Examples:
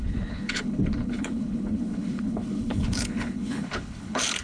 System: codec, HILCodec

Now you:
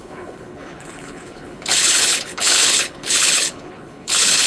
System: codec, HILCodec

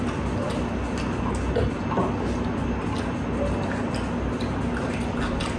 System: none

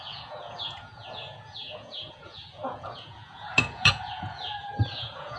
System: vocoder, Vocos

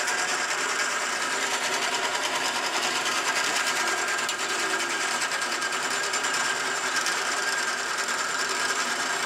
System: vocoder, BigVGAN v2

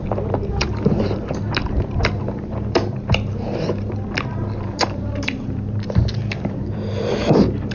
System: vocoder, BigVGAN v2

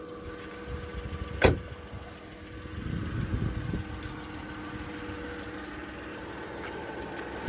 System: none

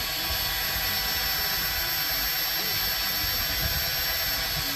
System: none